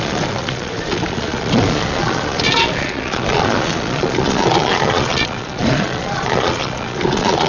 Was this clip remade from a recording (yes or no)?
yes